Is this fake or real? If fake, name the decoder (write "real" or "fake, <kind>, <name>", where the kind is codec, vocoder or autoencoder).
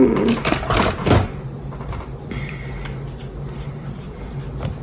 real